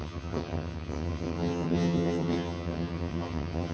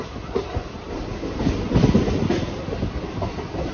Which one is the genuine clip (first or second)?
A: second